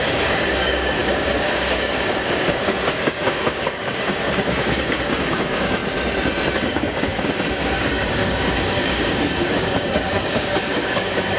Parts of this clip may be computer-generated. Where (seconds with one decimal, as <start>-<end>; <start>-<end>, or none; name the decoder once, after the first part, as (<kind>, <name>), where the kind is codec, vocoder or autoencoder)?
0.0-5.8 (codec, DAC); 6.5-11.4